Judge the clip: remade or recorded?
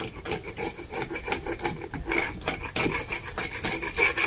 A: recorded